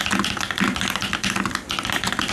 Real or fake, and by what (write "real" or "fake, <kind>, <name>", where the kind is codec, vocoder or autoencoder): real